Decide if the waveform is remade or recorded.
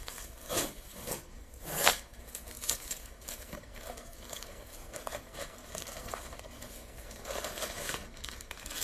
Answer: remade